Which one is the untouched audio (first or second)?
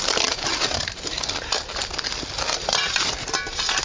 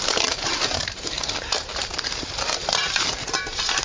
first